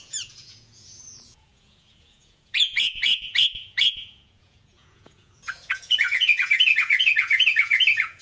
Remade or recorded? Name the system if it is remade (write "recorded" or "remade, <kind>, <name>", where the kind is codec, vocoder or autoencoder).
remade, vocoder, Vocos